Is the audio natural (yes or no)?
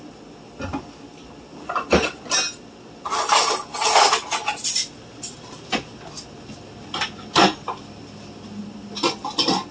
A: yes